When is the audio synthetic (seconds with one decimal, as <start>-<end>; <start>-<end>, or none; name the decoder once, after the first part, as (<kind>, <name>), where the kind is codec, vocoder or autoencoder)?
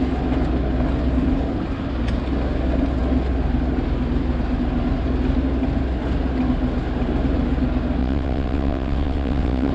8.0-9.7 (vocoder, WaveNeXt)